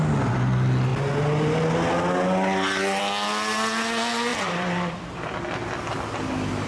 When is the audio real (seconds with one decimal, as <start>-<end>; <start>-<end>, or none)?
0.0-4.3; 5.3-6.7